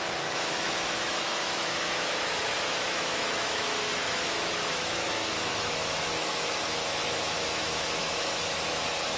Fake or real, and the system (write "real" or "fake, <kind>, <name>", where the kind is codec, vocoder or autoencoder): fake, autoencoder, DAC-VAE